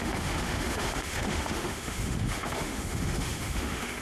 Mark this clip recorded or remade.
remade